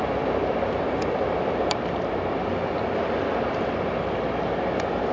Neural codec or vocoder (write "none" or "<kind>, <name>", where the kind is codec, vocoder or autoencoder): none